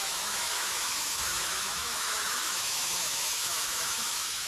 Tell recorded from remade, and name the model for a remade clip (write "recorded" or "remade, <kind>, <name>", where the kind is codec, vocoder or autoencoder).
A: remade, autoencoder, DAC-VAE